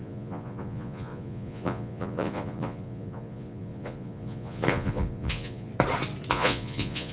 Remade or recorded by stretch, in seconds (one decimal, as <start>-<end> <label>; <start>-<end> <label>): 0.0-5.7 remade; 5.7-6.3 recorded; 6.3-7.1 remade

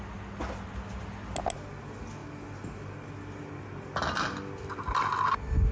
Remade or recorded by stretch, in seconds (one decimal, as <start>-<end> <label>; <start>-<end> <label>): 0.0-5.7 recorded

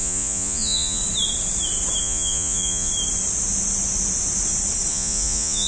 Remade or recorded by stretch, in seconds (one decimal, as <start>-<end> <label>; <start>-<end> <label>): 0.0-1.0 remade; 1.0-2.0 recorded; 2.0-2.9 remade; 2.9-4.9 recorded; 4.9-5.7 remade

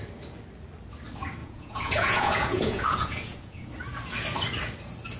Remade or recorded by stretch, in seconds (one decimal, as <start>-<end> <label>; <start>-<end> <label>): 0.0-1.4 recorded; 1.4-3.7 remade; 3.7-5.2 recorded